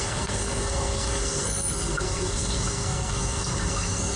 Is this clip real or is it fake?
fake